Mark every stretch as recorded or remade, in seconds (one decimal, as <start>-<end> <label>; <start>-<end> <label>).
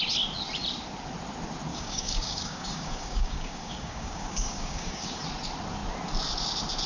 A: 0.0-1.7 recorded; 1.7-5.2 remade; 5.2-6.9 recorded